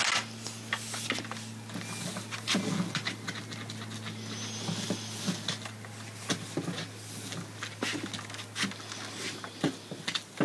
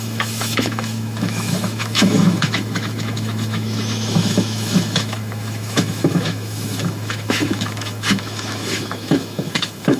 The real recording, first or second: first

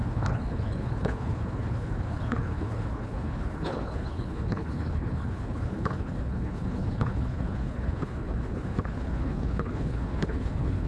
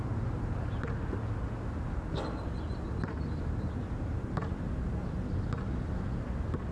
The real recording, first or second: second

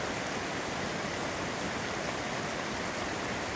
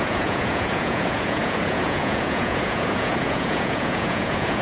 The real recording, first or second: first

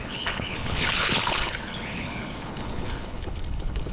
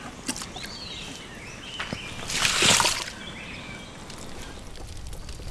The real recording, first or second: second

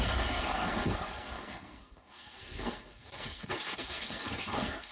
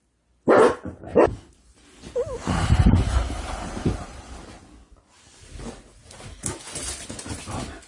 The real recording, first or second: second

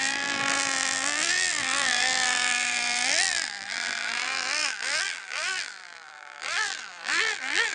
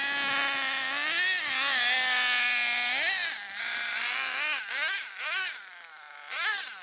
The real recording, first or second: second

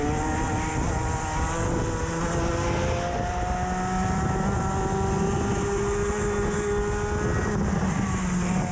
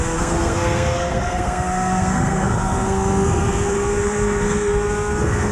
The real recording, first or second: first